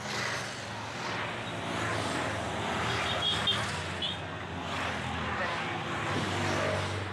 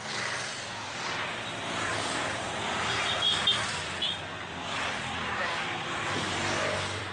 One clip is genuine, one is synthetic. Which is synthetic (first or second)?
second